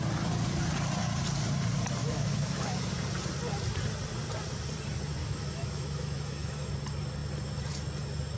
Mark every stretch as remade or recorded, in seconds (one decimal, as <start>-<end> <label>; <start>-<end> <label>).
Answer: 0.0-2.0 recorded; 2.0-2.9 remade; 2.9-5.2 recorded; 5.2-6.7 remade; 6.7-8.4 recorded